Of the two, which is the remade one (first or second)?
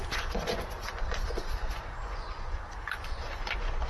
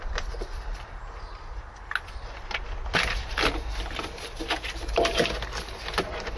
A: first